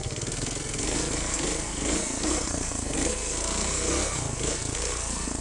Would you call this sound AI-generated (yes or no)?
yes